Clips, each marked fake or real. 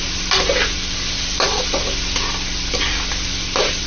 real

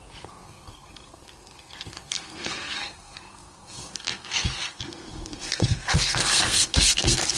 fake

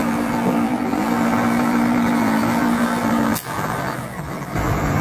fake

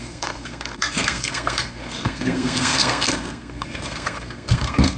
fake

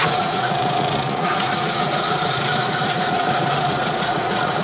fake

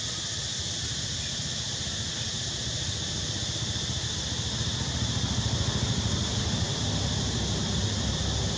real